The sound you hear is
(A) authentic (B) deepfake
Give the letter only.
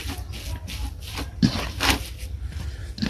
A